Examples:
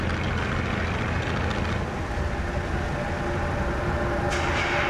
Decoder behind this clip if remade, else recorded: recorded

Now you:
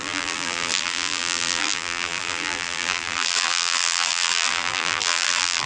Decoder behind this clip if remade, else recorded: remade, vocoder, BigVGAN v2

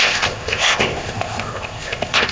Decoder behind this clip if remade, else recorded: remade, codec, ZipCodec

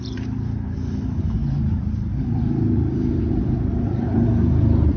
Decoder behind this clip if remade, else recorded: remade, vocoder, BigVGAN v2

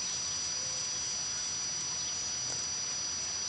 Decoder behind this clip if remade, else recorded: recorded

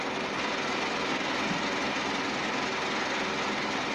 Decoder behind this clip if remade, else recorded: recorded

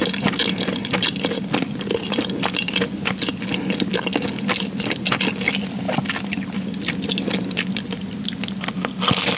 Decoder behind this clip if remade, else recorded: recorded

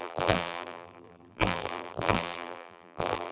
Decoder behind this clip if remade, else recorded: remade, vocoder, BigVGAN v2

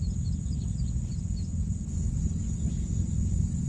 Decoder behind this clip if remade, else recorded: recorded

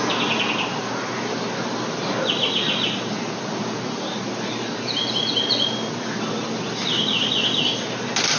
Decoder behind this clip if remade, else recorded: recorded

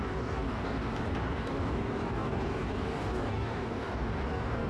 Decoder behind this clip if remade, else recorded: remade, codec, DAC